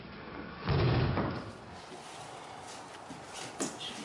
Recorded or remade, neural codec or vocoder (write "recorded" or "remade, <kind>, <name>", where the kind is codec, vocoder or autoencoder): recorded